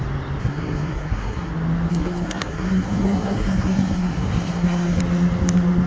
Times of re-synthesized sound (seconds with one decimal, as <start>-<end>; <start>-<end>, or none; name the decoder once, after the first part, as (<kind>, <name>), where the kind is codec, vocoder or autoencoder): 0.4-1.5 (codec, SNAC); 1.9-5.0